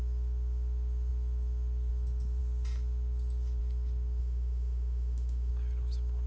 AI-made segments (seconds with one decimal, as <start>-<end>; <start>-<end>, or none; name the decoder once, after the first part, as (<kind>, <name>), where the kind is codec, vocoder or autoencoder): 4.2-5.5 (autoencoder, DAC-VAE)